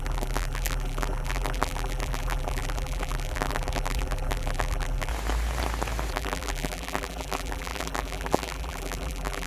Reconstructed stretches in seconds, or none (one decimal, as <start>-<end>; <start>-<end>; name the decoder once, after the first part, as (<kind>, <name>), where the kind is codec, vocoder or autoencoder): 0.0-5.1 (vocoder, BigVGAN v2); 6.1-9.5